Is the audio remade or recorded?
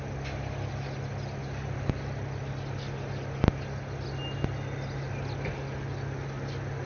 recorded